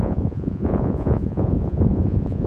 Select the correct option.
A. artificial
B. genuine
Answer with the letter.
A